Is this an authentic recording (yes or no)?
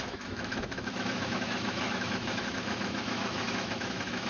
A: no